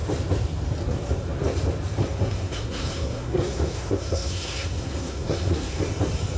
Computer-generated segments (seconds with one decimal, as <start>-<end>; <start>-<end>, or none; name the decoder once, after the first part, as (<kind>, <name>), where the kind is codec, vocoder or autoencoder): 2.0-5.8 (codec, SNAC)